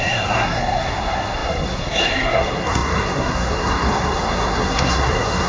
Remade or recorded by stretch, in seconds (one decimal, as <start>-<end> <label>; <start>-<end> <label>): 0.0-5.5 remade